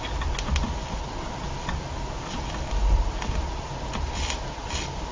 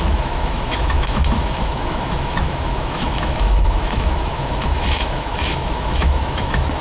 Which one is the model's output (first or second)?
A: second